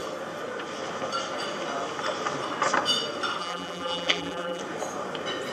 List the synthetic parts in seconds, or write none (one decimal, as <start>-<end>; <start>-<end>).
3.4-4.6